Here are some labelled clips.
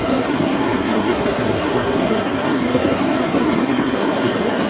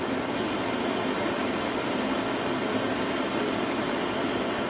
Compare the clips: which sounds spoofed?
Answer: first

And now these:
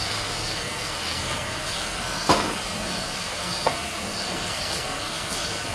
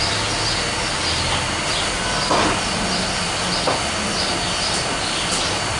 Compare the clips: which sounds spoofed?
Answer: first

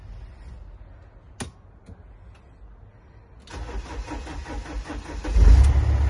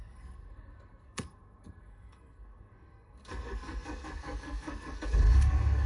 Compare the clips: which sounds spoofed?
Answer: second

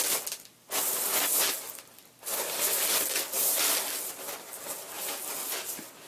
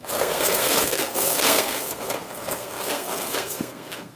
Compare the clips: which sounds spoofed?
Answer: second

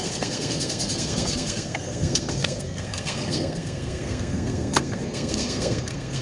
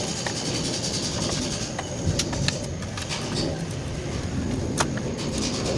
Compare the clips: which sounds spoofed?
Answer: first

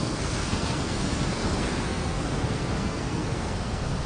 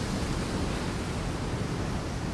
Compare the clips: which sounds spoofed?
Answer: first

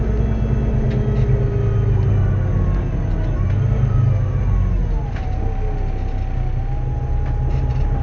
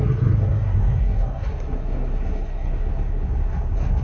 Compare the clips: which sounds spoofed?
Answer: second